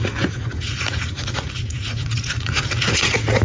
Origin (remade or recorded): remade